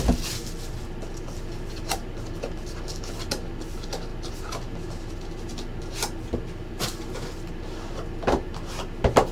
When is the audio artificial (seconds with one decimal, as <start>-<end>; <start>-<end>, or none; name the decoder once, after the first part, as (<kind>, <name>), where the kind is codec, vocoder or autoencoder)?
none